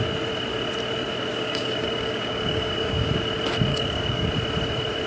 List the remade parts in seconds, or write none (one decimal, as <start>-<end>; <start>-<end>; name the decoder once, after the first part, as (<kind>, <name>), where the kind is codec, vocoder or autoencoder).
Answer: 1.3-3.1 (codec, DAC); 3.7-4.3